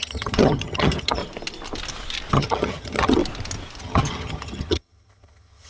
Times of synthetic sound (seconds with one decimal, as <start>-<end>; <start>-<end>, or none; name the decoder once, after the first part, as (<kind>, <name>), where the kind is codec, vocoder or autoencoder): 0.0-1.2 (vocoder, HiFi-GAN); 2.3-3.2; 3.8-5.7